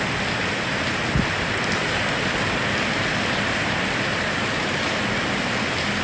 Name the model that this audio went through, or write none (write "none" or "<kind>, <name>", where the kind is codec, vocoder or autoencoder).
none